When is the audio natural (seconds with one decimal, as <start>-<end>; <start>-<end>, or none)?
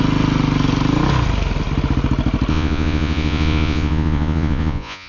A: 0.0-2.5